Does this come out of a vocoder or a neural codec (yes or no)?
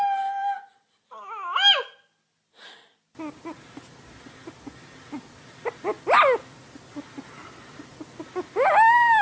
no